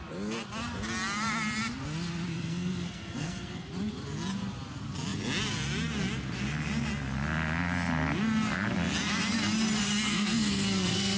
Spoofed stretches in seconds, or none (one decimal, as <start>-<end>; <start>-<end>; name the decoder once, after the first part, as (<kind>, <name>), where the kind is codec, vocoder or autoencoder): 2.3-3.7 (codec, SNAC); 10.1-11.2